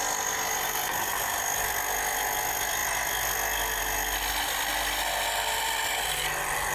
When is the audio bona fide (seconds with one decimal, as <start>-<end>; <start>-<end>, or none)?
0.0-6.7